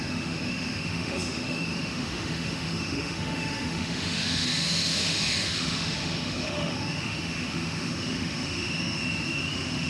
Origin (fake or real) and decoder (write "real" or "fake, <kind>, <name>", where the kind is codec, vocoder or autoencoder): fake, autoencoder, DAC-VAE